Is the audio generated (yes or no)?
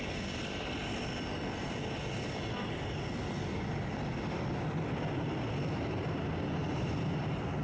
no